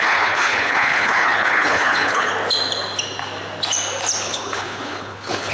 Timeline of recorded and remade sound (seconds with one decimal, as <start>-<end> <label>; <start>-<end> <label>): 0.0-2.3 remade; 2.3-4.2 recorded; 4.2-5.5 remade